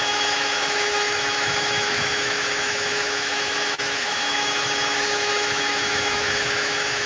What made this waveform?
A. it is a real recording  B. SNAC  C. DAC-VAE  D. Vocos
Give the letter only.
C